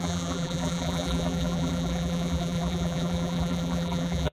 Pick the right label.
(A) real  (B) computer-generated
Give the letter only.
B